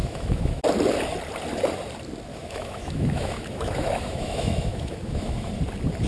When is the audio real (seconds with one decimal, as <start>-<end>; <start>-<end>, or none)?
0.6-2.3; 5.5-6.1